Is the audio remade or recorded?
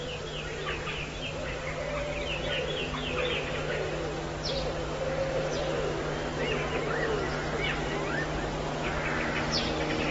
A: recorded